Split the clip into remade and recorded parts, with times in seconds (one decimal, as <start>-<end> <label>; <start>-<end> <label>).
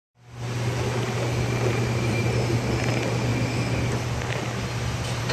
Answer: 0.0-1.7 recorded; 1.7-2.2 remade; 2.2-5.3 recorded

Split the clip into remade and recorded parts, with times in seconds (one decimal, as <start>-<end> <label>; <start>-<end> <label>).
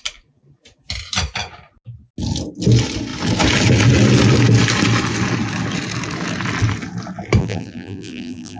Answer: 0.0-7.4 recorded; 7.4-8.6 remade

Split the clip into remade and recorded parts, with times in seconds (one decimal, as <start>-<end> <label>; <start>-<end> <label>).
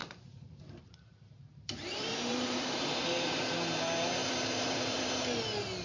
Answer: 0.0-3.4 remade; 3.4-4.2 recorded; 4.2-5.1 remade; 5.1-5.8 recorded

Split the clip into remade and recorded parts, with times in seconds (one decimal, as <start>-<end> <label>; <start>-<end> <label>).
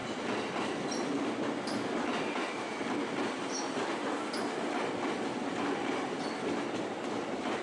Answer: 0.0-7.6 recorded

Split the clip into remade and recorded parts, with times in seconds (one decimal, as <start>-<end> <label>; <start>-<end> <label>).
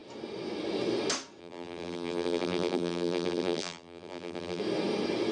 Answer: 0.0-1.4 recorded; 1.4-4.6 remade; 4.6-5.3 recorded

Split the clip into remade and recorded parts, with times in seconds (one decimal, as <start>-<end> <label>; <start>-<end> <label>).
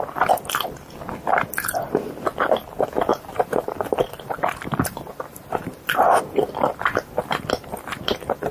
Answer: 0.0-3.1 recorded; 3.1-6.2 remade; 6.2-8.5 recorded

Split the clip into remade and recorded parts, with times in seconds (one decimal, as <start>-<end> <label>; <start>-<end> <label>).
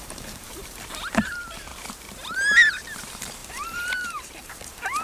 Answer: 0.0-1.7 remade; 1.7-3.0 recorded; 3.0-5.0 remade